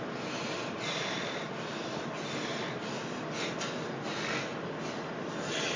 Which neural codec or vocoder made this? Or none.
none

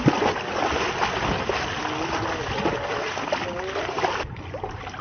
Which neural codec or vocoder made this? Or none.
none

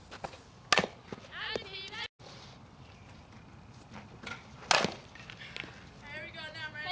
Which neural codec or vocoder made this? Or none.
none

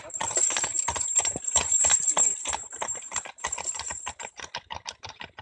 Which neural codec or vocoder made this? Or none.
none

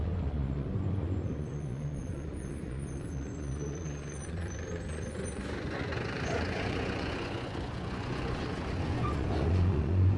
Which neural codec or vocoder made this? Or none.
vocoder, Vocos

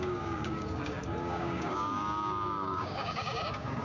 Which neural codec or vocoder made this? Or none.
codec, DAC